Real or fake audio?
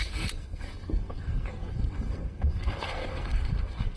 fake